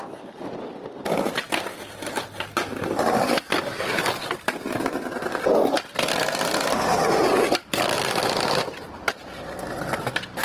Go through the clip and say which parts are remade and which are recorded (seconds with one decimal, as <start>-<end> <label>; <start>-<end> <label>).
0.0-10.4 recorded